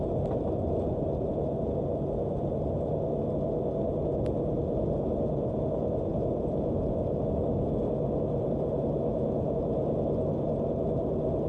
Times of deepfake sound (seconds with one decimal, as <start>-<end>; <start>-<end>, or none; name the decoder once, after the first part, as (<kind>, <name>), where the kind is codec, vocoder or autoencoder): 4.6-5.6 (vocoder, Vocos); 6.1-7.2; 9.1-9.6